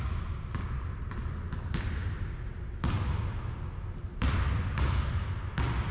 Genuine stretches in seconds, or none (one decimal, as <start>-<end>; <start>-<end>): 0.0-5.9

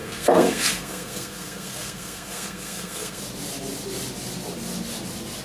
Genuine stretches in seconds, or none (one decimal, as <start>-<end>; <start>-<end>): 3.2-5.4

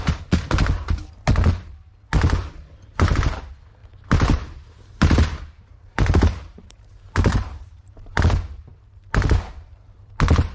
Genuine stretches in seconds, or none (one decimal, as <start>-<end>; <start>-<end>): 0.0-2.4; 3.3-3.8; 8.2-8.7; 10.1-10.5

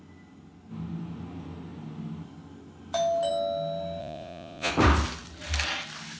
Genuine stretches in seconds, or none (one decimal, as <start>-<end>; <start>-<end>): 0.0-4.0; 4.7-6.2

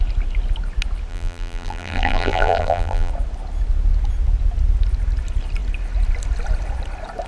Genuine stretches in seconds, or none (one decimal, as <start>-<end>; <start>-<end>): 0.0-1.1; 3.1-7.3

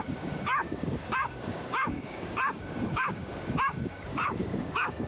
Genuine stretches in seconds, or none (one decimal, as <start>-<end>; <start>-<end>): none

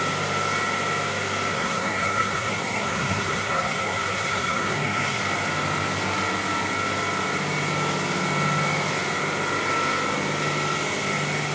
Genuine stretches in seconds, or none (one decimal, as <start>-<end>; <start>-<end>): 0.0-1.5; 5.2-11.5

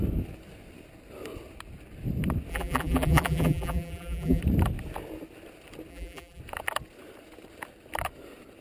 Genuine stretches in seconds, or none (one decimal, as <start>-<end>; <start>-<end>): 0.0-2.5; 4.4-5.9; 6.4-8.6